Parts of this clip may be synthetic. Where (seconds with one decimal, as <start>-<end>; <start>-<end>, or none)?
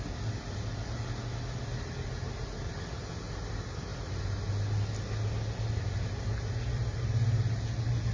none